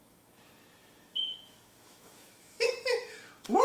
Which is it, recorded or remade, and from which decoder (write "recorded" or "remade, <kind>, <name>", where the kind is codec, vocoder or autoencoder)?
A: remade, autoencoder, DAC-VAE